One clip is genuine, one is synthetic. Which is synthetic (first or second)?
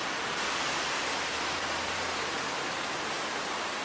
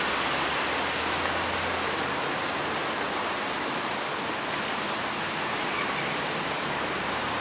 first